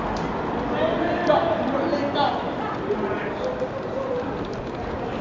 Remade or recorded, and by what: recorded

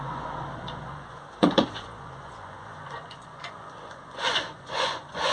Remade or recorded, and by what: remade, vocoder, Vocos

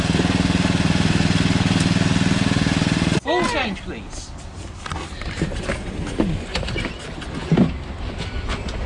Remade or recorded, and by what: recorded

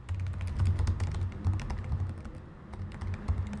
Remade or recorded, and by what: recorded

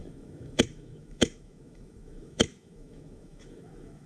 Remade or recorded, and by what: remade, autoencoder, DAC-VAE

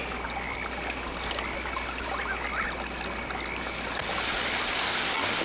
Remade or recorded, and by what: recorded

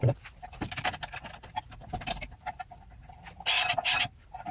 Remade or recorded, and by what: recorded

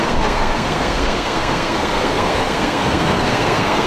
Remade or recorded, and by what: remade, codec, SNAC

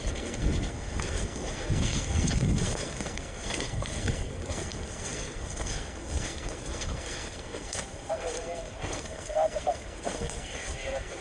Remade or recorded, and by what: remade, codec, SNAC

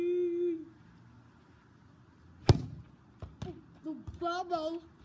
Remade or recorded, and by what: recorded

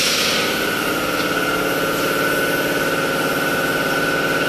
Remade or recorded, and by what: recorded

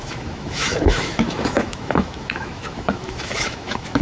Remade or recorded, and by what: remade, autoencoder, DAC-VAE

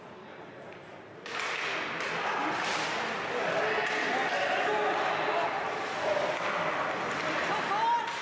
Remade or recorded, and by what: recorded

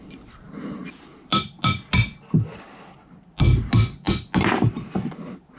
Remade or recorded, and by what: recorded